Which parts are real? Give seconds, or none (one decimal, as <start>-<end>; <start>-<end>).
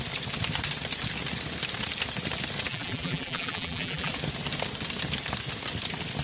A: 0.0-2.7; 4.1-6.2